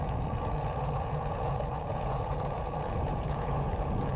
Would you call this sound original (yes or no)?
no